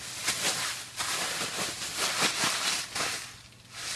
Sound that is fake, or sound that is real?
real